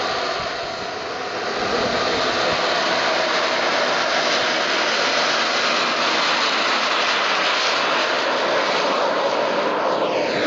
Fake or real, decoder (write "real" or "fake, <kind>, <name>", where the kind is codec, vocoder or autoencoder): real